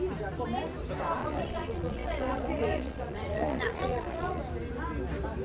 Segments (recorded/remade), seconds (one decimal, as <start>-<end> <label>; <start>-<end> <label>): 0.0-1.2 recorded; 1.2-4.4 remade; 4.4-5.4 recorded

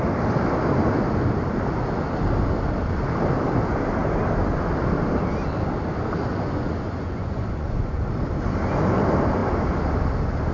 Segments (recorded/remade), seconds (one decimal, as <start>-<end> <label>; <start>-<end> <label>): 0.0-6.3 recorded; 6.3-8.0 remade; 8.0-10.5 recorded

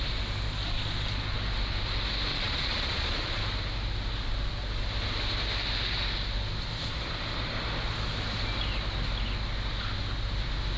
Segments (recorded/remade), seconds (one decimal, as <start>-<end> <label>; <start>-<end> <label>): 0.0-2.3 recorded; 2.3-3.4 remade; 3.4-10.8 recorded

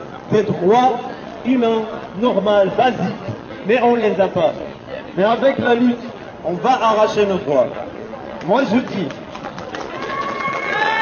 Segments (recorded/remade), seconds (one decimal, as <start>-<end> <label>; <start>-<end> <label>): 0.0-6.3 remade; 6.3-7.4 recorded; 7.4-11.0 remade

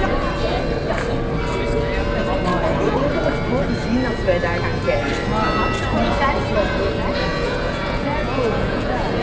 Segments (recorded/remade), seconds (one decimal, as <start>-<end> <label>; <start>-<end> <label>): 0.0-7.3 recorded; 7.3-9.2 remade

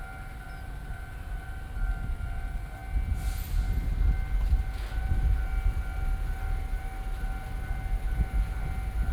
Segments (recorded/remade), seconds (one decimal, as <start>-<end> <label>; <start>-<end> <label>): 0.0-9.1 recorded